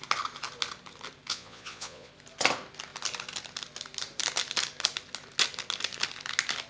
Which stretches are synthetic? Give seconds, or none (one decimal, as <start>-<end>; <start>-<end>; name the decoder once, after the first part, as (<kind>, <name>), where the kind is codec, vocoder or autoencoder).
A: 1.3-2.1 (vocoder, Vocos)